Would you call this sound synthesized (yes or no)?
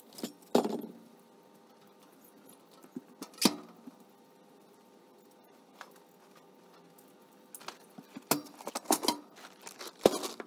no